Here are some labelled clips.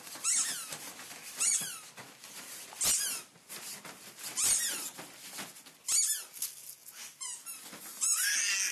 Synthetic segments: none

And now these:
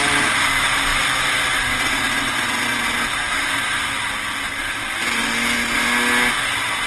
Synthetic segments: none

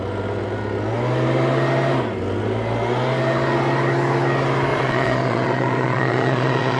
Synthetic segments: 4.7-6.8 (vocoder, Vocos)

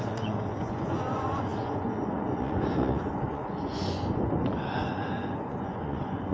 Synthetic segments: 0.0-6.3 (vocoder, Vocos)

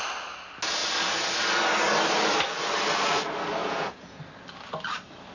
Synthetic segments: 3.6-4.2 (vocoder, Vocos)

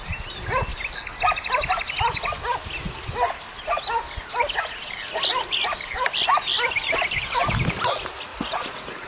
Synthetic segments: 8.3-9.1 (vocoder, Vocos)